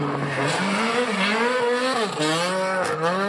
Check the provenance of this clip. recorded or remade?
recorded